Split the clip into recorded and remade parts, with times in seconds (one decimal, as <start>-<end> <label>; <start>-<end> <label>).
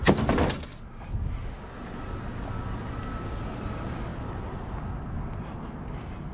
0.0-6.3 recorded